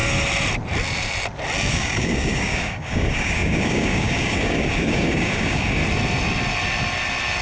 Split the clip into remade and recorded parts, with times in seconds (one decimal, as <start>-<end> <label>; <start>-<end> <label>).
0.0-1.7 recorded; 1.7-5.8 remade; 5.8-7.4 recorded